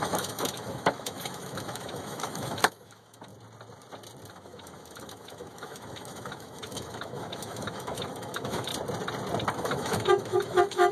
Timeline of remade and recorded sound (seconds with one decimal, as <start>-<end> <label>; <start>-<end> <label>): 0.0-3.3 remade; 3.3-4.3 recorded; 4.3-8.7 remade; 8.7-9.5 recorded; 9.5-10.9 remade